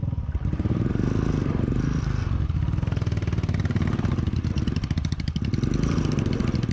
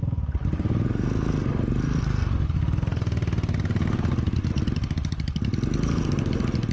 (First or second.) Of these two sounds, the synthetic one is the first